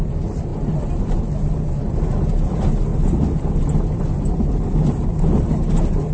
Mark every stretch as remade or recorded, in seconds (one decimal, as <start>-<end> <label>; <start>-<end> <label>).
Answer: 0.0-6.1 recorded